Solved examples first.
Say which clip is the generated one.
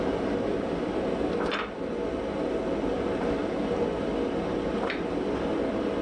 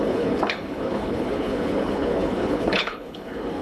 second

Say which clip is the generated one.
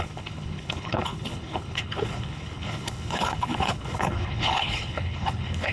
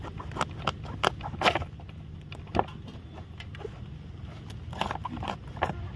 first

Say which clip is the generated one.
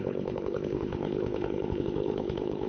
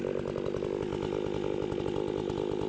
first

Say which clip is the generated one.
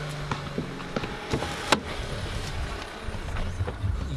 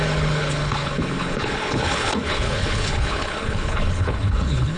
second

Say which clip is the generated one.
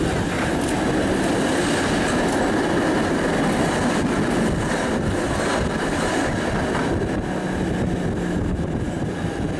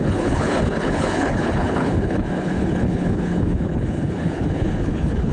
second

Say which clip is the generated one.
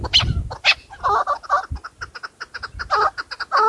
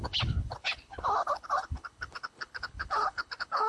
second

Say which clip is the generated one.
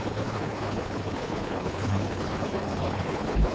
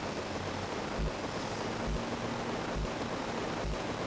first